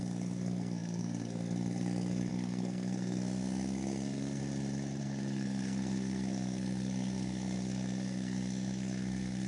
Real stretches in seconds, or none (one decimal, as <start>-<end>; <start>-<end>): 4.4-5.0